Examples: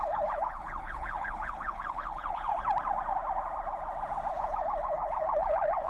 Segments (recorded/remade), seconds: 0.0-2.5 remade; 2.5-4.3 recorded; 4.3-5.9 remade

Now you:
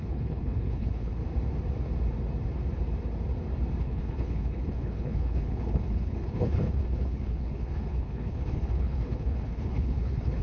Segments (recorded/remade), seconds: 0.0-1.2 remade; 1.2-3.8 recorded; 3.8-10.4 remade